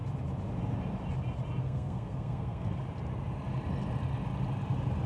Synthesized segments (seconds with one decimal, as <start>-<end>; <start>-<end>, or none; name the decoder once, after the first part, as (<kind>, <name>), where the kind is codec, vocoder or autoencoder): 1.6-2.7 (codec, SNAC)

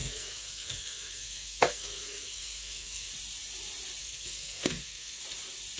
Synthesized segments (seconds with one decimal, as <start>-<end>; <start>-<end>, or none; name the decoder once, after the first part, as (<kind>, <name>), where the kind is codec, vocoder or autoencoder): 0.0-3.1 (codec, SNAC); 4.0-5.2

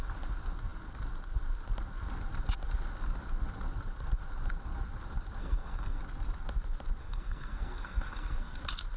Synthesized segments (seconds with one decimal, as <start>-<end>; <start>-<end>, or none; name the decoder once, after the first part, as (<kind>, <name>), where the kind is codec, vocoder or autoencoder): 5.4-6.0 (codec, SNAC); 7.0-8.6

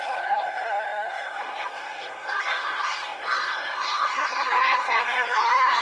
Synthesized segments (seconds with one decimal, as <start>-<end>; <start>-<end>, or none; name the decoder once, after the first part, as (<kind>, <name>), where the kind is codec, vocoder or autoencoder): 0.0-5.8 (codec, SNAC)